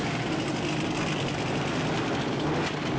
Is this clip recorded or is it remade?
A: remade